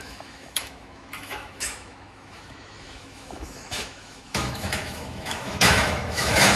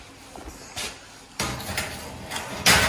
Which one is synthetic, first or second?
first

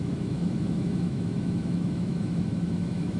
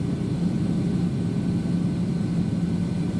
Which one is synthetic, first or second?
first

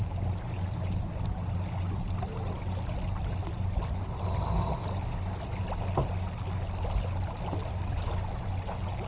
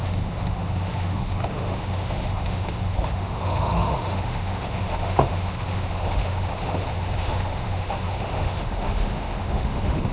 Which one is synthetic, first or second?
second